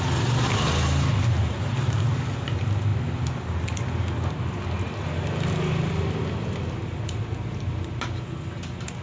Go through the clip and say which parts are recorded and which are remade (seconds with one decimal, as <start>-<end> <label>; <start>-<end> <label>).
0.0-9.0 recorded